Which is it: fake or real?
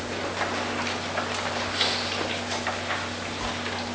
real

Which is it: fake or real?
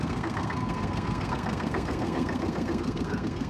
fake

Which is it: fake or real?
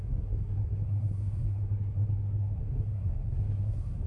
fake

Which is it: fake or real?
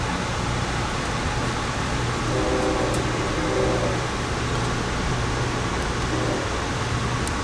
real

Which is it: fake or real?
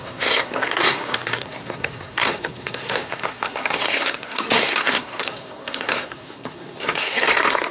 fake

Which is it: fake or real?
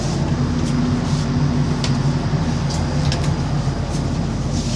real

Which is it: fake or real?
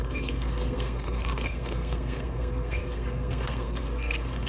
fake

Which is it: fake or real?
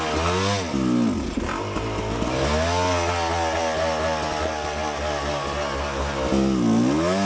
real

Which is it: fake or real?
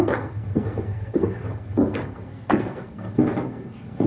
fake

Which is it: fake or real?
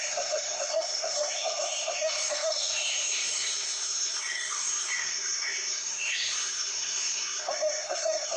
fake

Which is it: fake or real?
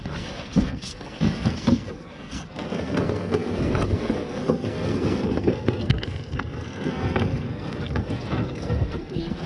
fake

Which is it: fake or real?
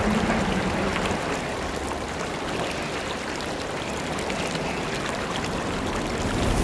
real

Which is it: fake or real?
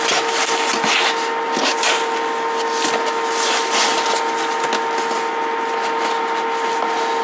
real